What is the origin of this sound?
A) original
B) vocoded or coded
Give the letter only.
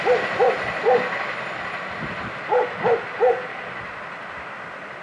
A